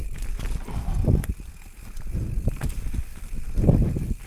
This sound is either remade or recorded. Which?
recorded